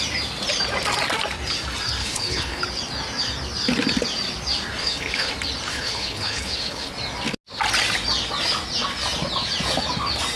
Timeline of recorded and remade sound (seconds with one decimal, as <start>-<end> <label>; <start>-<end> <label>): 0.0-2.0 recorded; 2.0-2.6 remade; 2.6-4.8 recorded; 4.8-5.3 remade; 5.3-5.7 recorded; 5.7-6.9 remade; 6.9-10.4 recorded